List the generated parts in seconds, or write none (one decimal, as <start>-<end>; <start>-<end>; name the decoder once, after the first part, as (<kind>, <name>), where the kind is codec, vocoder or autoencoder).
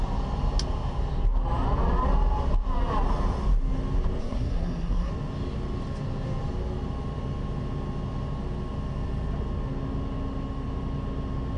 4.2-5.1 (codec, SNAC)